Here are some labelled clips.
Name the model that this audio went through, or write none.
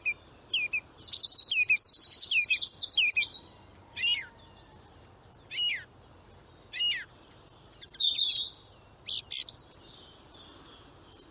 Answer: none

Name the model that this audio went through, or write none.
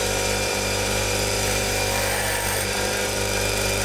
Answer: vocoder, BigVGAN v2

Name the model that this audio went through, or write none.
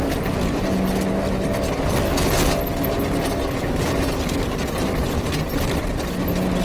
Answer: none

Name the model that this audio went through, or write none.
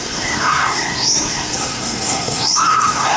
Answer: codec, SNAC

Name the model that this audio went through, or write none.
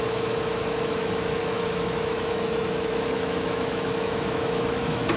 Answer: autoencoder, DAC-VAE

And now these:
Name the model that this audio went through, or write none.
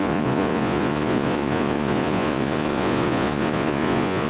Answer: vocoder, Vocos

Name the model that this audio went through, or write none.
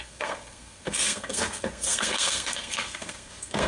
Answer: codec, SNAC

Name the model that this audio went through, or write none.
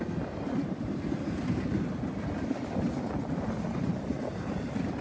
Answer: none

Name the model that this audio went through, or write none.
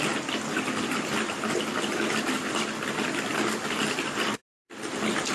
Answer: none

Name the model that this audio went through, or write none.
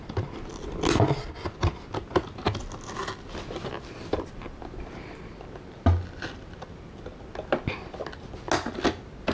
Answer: none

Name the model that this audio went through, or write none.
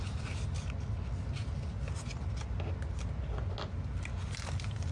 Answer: none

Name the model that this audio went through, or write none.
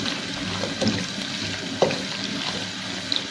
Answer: none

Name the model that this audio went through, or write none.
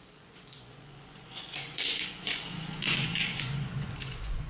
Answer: vocoder, Vocos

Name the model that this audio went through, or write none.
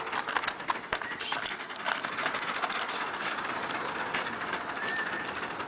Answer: none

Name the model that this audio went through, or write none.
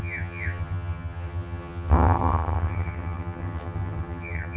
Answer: vocoder, HiFi-GAN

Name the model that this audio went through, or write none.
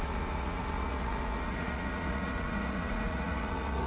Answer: vocoder, Vocos